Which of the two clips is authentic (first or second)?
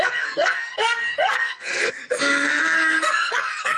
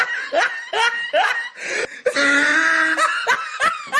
second